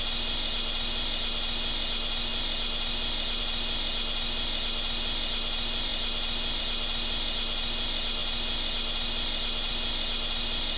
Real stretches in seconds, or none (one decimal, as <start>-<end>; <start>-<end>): 0.0-10.8